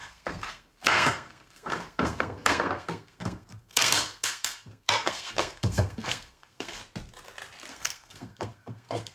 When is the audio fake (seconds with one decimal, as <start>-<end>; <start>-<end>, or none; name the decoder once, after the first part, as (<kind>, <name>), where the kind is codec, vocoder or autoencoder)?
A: 0.0-6.8 (codec, SNAC); 7.7-9.1